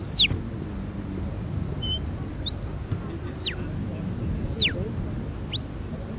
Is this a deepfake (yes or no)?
no